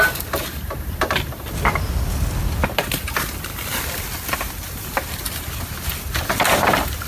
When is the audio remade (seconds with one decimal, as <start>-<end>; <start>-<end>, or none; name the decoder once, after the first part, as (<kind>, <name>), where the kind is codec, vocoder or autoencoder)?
none